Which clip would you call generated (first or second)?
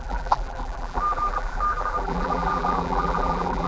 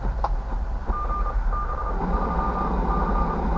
first